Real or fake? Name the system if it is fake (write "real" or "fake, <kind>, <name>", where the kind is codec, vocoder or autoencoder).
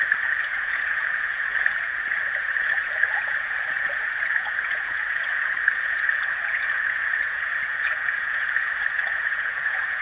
fake, vocoder, Vocos